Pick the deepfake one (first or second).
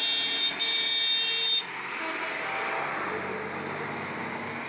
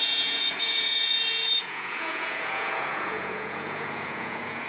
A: second